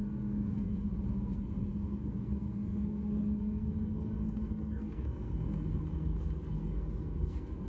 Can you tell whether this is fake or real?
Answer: fake